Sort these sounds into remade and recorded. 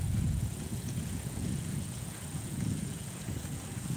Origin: remade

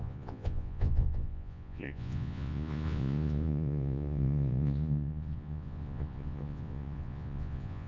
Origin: remade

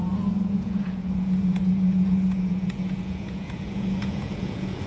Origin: remade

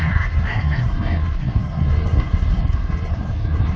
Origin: remade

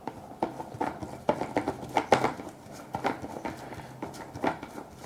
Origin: recorded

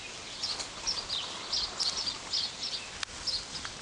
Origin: recorded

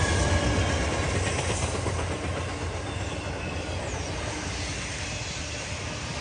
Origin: recorded